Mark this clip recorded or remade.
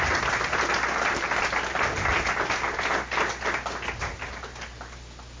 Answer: recorded